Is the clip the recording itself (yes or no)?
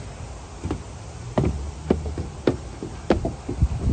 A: yes